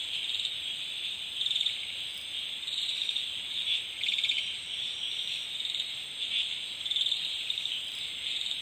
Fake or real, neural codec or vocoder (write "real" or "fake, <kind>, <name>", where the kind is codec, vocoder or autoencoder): fake, vocoder, BigVGAN v2